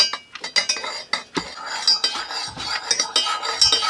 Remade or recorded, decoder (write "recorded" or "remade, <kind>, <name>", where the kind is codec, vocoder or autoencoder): recorded